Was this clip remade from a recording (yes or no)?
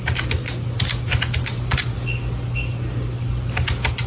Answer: no